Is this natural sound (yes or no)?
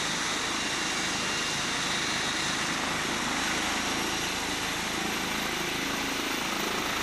yes